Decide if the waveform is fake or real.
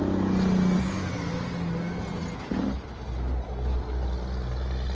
real